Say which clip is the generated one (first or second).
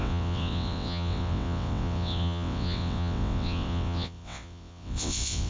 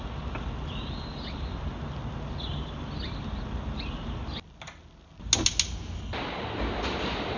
first